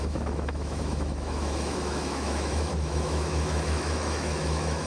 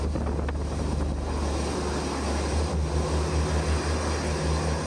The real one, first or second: second